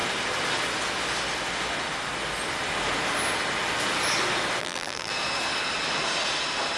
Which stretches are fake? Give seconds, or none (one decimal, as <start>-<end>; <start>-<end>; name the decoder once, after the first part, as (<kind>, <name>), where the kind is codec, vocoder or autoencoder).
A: 4.6-5.1 (vocoder, BigVGAN v2)